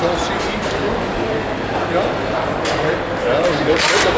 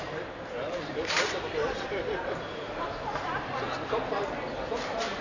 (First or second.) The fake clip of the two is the second